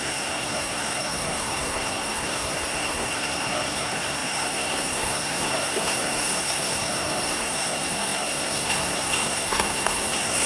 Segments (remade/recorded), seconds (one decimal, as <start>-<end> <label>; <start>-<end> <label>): 0.0-10.5 remade